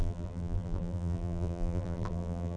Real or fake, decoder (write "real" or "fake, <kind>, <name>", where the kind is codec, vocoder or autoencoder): fake, vocoder, BigVGAN v2